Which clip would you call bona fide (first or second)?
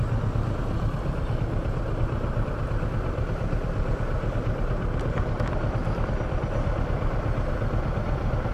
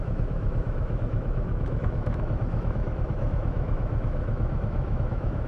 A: first